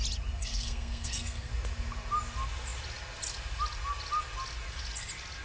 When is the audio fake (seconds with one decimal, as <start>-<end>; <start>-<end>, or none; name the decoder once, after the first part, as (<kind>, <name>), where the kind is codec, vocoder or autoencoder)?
0.4-1.5 (codec, SNAC)